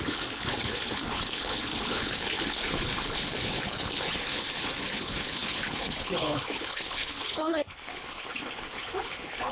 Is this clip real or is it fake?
fake